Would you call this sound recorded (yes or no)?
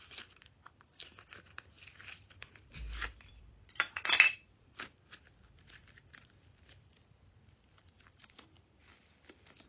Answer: no